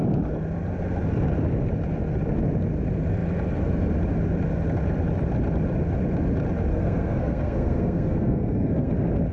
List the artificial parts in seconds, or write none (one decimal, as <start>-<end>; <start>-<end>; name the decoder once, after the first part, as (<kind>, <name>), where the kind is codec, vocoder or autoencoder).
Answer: 6.7-8.9 (codec, SNAC)